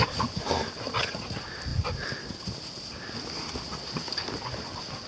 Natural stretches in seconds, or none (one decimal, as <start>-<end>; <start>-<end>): 0.0-5.1